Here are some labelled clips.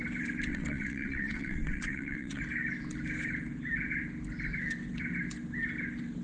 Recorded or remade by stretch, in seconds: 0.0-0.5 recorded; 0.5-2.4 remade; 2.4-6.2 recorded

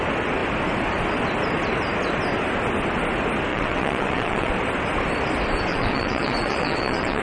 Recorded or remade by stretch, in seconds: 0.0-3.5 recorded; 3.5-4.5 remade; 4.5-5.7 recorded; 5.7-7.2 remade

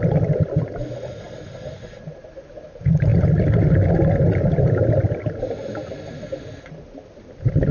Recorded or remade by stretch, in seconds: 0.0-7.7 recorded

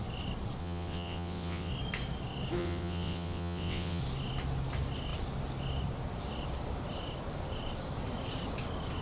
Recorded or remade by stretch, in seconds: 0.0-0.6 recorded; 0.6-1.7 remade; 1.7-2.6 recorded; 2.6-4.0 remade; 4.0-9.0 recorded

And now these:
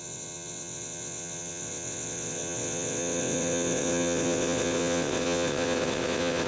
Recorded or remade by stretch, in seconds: 0.0-6.5 remade

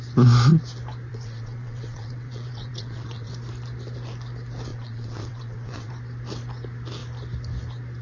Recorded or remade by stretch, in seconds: 0.0-1.1 recorded; 1.1-3.3 remade; 3.3-4.7 recorded; 4.7-5.9 remade; 5.9-8.0 recorded

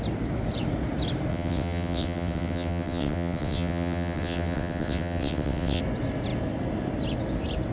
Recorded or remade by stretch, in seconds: 0.0-1.3 recorded; 1.3-5.8 remade; 5.8-7.7 recorded